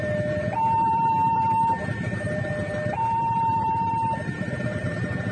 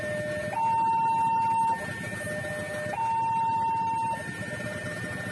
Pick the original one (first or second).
second